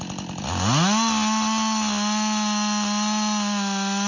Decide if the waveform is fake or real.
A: real